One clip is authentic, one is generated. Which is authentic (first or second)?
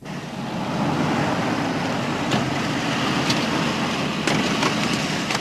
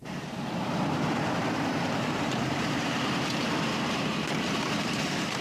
first